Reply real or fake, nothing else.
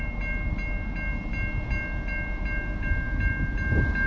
real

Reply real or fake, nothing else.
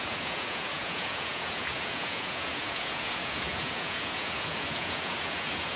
fake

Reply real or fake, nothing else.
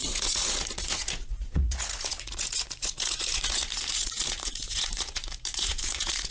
fake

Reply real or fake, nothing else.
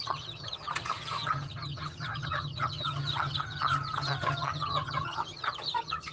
fake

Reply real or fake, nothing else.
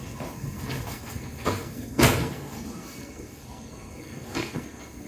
fake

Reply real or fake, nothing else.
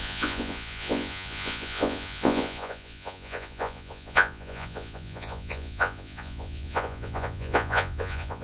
fake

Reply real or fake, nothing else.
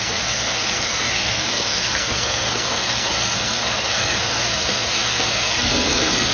fake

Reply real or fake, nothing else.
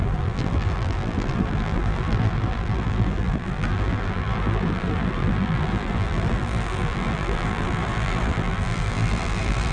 fake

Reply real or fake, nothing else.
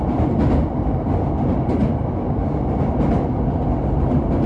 real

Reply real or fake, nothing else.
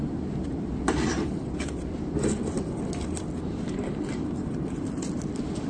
fake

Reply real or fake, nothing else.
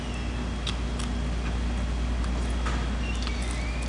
real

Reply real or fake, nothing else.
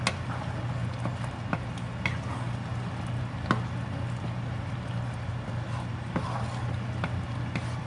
real